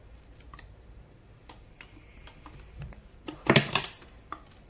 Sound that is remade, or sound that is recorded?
remade